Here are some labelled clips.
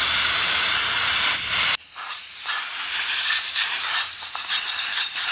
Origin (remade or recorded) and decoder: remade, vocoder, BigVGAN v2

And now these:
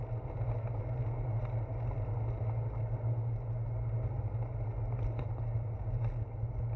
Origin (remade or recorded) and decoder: recorded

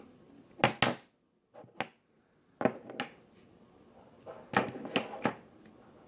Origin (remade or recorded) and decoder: recorded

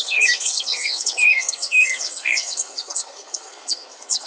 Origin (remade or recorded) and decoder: remade, codec, SNAC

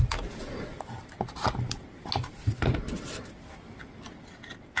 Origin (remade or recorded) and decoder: recorded